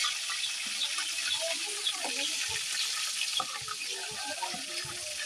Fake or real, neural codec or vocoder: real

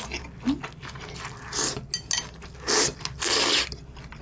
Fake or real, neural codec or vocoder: real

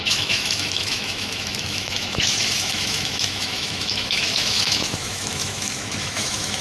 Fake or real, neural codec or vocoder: fake, autoencoder, DAC-VAE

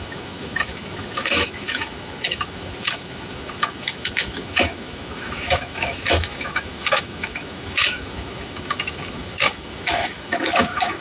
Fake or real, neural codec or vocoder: fake, autoencoder, DAC-VAE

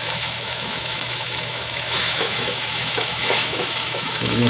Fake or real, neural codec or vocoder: fake, autoencoder, DAC-VAE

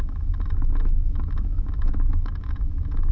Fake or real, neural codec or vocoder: fake, autoencoder, DAC-VAE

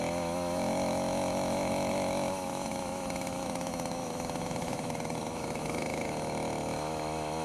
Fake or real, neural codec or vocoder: fake, autoencoder, DAC-VAE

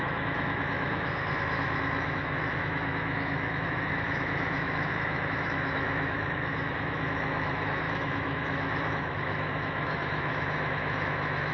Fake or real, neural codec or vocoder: fake, autoencoder, DAC-VAE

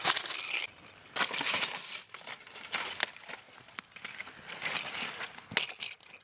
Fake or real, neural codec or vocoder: real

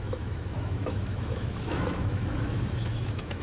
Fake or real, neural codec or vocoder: fake, autoencoder, DAC-VAE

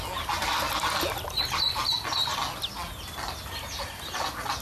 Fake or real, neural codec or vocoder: real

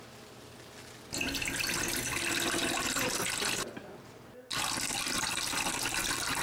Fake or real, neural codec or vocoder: real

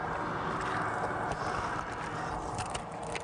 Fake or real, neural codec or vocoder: real